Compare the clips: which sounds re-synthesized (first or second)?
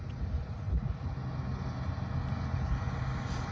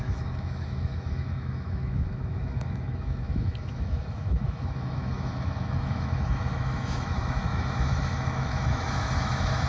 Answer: second